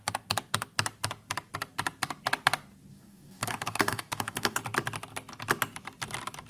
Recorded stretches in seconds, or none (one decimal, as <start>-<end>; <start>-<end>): 0.0-2.9; 4.6-6.5